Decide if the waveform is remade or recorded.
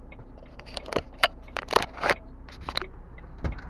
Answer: remade